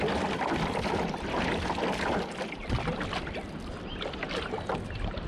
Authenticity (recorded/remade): recorded